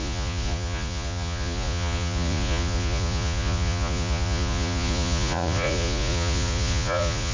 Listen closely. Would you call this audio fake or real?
fake